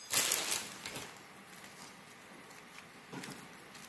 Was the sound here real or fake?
real